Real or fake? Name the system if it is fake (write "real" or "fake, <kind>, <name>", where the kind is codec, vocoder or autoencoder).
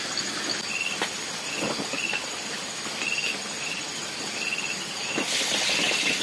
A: real